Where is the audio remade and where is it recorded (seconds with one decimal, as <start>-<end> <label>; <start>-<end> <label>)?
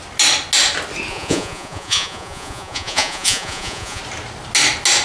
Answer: 0.0-1.1 recorded; 1.1-4.0 remade; 4.0-5.0 recorded